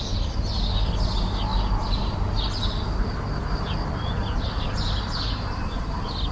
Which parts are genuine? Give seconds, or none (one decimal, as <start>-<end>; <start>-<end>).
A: 0.0-6.3